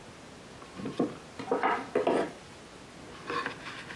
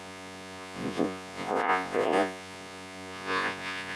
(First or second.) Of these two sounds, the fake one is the second